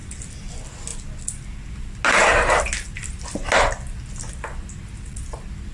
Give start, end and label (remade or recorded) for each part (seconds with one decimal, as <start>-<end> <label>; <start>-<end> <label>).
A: 0.0-5.7 recorded